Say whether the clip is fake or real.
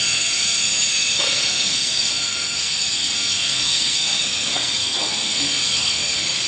fake